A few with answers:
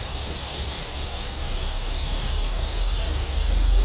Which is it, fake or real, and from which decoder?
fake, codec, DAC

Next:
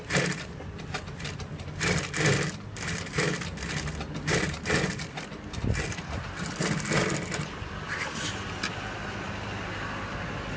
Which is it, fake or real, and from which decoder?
real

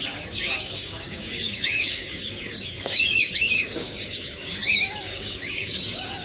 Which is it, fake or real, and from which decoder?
fake, codec, DAC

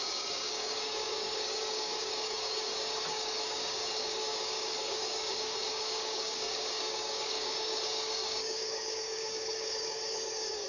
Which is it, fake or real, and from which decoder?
fake, codec, DAC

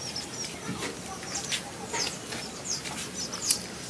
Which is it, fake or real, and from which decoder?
real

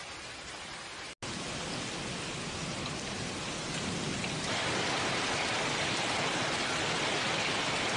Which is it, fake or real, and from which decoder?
real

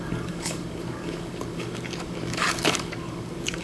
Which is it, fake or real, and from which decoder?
fake, codec, DAC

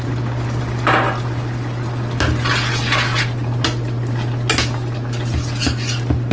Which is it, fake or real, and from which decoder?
real